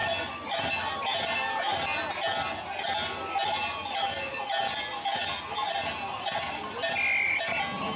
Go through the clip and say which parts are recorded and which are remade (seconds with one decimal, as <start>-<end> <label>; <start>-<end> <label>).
0.0-8.0 recorded